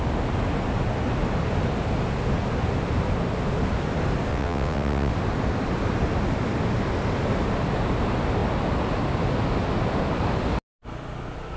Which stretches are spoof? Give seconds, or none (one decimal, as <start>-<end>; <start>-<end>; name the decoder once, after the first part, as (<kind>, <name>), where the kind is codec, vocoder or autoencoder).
4.3-5.1 (vocoder, WaveNeXt)